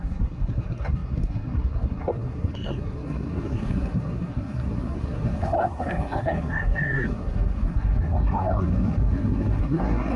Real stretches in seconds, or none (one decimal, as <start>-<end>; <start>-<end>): none